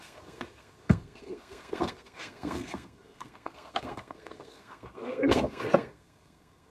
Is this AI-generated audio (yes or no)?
yes